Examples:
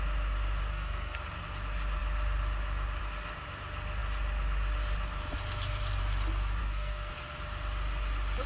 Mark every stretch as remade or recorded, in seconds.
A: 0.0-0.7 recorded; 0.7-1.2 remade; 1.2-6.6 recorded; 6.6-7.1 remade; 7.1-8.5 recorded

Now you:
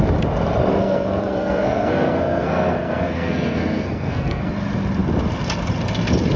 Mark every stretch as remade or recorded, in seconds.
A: 0.0-0.7 recorded; 0.7-4.5 remade; 4.5-6.4 recorded

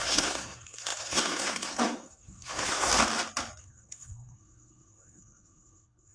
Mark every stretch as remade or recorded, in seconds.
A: 0.0-2.9 remade; 2.9-3.6 recorded; 3.6-6.1 remade

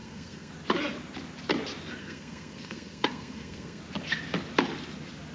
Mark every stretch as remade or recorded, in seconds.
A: 0.0-0.5 remade; 0.5-2.0 recorded; 2.0-3.8 remade; 3.8-5.3 recorded

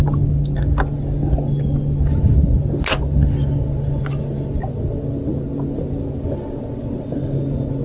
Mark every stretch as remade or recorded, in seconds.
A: 0.0-7.8 recorded

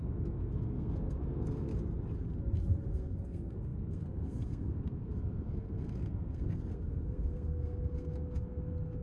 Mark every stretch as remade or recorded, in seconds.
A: 0.0-1.7 remade; 1.7-2.9 recorded; 2.9-9.0 remade